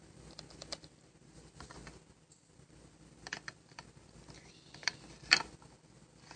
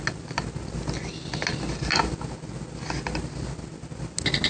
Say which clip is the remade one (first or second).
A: first